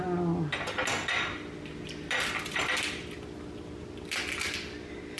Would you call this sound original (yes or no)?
yes